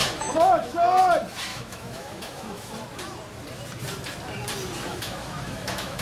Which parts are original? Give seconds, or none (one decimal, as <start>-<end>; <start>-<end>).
1.0-1.5; 2.7-4.9